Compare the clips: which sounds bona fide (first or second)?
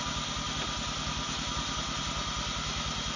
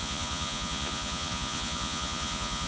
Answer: first